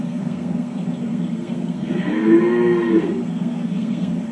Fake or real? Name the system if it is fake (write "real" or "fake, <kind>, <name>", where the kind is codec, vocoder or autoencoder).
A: fake, codec, SNAC